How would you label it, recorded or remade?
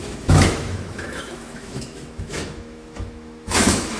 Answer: remade